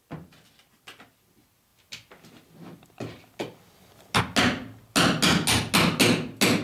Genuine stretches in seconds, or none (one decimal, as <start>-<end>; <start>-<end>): 0.0-6.6